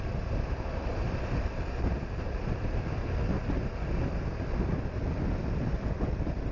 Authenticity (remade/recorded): recorded